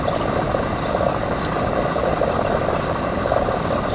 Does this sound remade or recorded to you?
recorded